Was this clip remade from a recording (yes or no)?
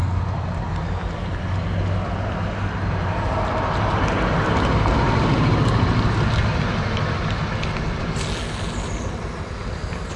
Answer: no